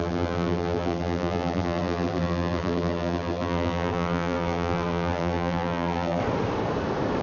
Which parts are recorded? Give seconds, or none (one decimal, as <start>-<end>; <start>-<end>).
6.2-7.2